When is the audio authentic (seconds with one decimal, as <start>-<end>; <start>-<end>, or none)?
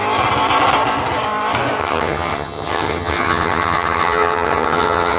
0.0-1.8